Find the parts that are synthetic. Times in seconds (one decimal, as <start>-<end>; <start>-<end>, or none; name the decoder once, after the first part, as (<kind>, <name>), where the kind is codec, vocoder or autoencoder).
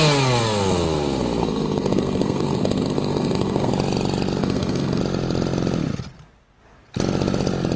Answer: 1.4-3.7 (codec, SNAC); 4.4-5.0